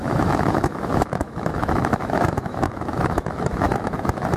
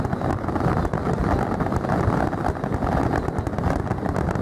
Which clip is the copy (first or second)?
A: first